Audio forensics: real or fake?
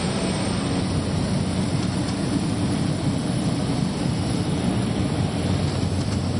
fake